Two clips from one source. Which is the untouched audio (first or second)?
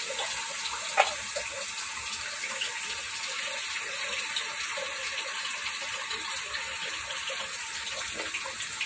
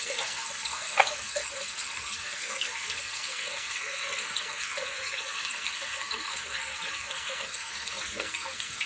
first